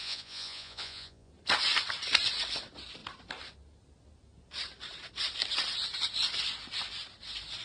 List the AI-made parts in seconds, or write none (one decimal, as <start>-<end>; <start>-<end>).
0.0-1.3